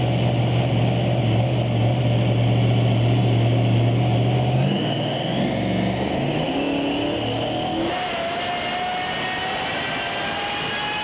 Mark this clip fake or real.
real